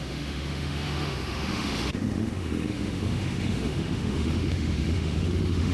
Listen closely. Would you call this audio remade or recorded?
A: remade